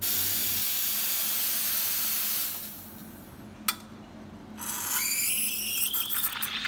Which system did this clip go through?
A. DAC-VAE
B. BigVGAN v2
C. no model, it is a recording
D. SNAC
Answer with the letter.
C